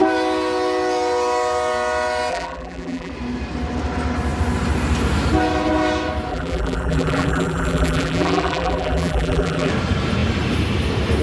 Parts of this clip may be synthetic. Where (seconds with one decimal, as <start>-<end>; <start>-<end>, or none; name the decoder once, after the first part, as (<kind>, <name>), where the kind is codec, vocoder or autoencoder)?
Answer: 2.3-3.1 (vocoder, BigVGAN v2); 6.3-9.7